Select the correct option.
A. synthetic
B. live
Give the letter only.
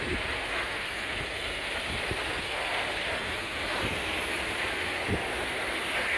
B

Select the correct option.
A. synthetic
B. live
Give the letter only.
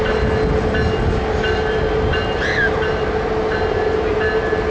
B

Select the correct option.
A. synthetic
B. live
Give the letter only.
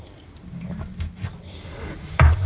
B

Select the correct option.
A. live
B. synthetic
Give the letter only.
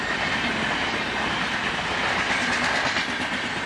A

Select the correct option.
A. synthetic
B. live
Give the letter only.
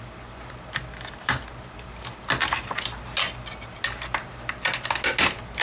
B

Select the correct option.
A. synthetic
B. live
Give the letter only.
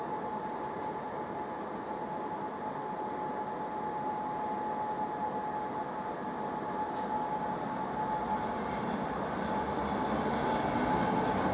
B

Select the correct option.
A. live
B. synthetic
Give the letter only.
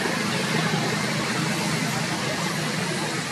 A